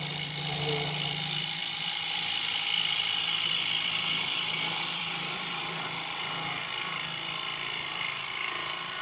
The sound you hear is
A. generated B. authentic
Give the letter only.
A